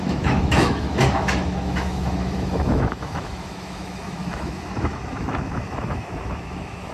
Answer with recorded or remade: remade